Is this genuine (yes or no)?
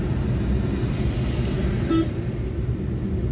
yes